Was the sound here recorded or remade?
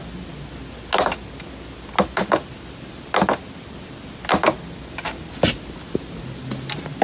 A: recorded